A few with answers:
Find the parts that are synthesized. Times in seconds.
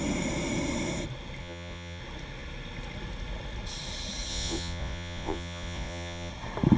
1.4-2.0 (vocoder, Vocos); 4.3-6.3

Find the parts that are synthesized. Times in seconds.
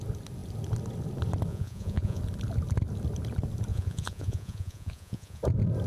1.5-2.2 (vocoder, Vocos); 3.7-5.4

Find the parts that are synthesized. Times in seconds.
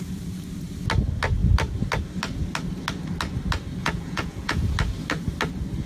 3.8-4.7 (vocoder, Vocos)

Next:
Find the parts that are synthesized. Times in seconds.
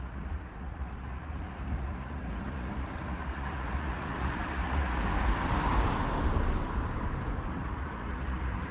0.0-5.0 (vocoder, Vocos); 7.5-8.7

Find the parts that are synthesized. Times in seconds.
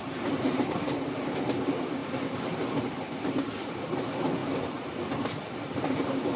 none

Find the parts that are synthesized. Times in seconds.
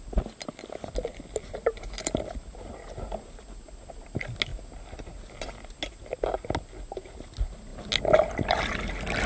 none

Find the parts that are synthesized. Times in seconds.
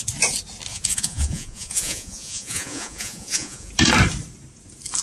0.7-3.7 (vocoder, Vocos)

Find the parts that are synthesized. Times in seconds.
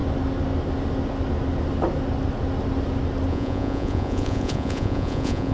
3.3-5.5 (vocoder, Vocos)